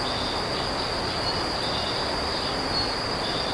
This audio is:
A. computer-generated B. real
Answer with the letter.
B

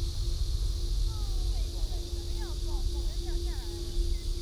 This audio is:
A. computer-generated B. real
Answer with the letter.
B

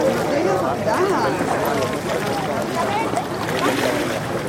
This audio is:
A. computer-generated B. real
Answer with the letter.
B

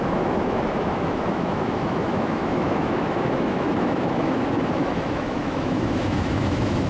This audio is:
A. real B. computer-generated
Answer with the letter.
B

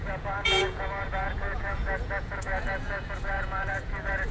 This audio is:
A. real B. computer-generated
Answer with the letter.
B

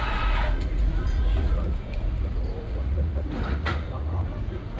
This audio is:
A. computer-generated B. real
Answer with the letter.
A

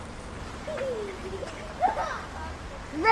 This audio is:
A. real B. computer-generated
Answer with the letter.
A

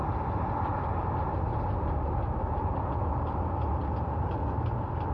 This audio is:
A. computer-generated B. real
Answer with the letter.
B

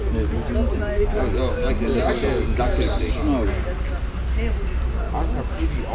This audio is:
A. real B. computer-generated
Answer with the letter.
A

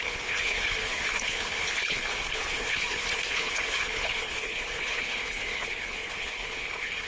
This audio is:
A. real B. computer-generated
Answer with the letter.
B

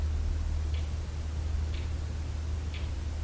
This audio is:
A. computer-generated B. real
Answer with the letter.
B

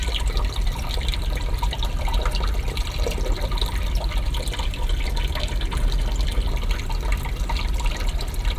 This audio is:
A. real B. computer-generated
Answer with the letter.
A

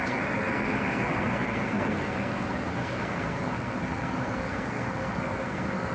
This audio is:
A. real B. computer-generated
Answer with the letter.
B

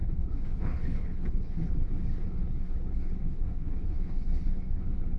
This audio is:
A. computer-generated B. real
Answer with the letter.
A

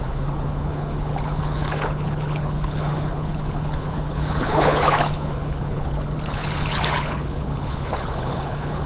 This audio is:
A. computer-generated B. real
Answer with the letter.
A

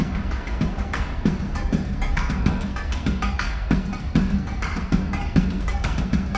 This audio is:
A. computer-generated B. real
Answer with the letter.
A